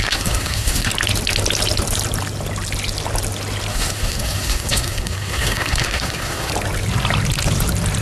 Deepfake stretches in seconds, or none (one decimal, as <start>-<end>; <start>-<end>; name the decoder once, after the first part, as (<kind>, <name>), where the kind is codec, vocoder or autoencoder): 0.0-0.9 (codec, SNAC); 3.7-6.5